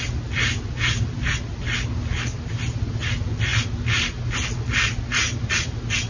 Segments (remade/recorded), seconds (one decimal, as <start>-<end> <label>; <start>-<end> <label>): 0.0-6.1 recorded